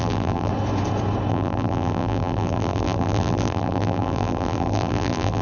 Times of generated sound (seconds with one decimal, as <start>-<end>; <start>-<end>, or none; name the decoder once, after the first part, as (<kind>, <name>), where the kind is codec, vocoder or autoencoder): 0.0-0.5 (vocoder, BigVGAN v2); 1.3-5.4